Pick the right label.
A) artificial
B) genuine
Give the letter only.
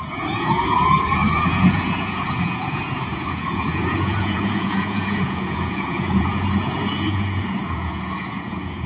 A